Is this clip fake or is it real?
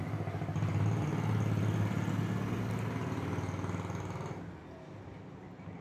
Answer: real